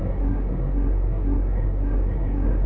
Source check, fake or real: fake